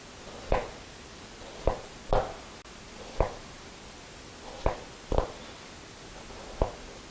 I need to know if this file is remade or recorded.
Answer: recorded